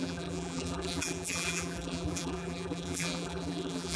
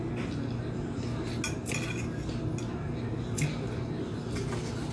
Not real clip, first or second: first